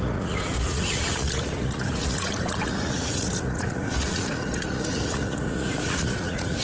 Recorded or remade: remade